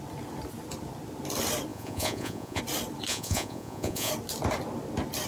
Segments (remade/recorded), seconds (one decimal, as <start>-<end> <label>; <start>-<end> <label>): 0.0-1.7 recorded; 1.7-2.6 remade; 2.6-3.1 recorded; 3.1-4.1 remade; 4.1-5.3 recorded